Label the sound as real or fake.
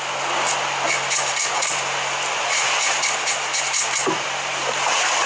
real